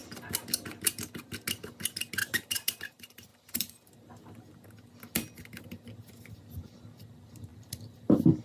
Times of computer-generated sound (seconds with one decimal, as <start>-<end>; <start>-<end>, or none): 2.2-2.8; 3.3-4.4; 7.5-8.4